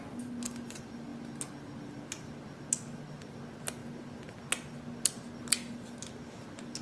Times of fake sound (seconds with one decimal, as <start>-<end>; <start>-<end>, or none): none